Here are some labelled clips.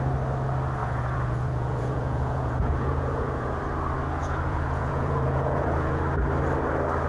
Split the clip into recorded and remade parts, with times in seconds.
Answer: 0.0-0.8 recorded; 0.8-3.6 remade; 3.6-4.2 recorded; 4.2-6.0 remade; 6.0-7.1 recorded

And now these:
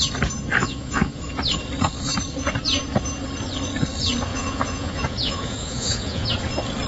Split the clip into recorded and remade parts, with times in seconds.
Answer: 0.0-0.6 recorded; 0.6-1.2 remade; 1.2-4.3 recorded; 4.3-6.3 remade; 6.3-6.9 recorded

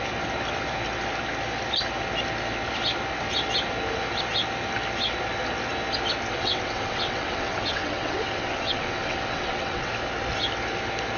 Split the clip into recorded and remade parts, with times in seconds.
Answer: 0.0-6.3 recorded; 6.3-9.9 remade; 9.9-11.2 recorded